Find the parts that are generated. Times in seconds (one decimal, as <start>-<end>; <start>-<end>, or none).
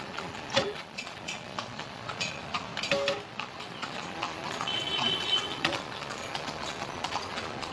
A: 0.0-2.7; 3.3-7.7